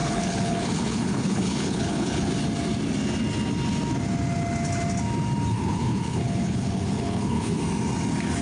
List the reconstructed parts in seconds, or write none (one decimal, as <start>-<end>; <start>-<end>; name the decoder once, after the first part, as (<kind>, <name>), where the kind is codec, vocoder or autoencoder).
0.0-2.3 (codec, HILCodec); 5.5-7.6

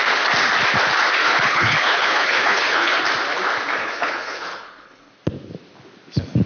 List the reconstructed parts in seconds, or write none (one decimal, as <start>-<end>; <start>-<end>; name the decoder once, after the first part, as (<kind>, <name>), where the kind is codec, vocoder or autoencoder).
1.2-3.0 (codec, HILCodec); 3.8-5.1

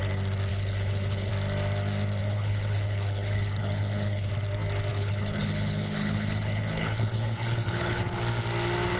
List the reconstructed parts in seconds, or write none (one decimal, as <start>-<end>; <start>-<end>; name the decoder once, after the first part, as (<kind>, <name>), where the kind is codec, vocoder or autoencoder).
0.5-1.3 (codec, HILCodec); 2.2-4.3; 4.9-8.0

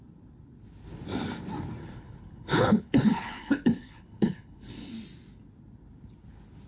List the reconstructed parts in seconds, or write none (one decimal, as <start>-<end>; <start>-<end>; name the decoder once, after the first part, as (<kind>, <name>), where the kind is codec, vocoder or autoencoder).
1.8-4.9 (codec, HILCodec)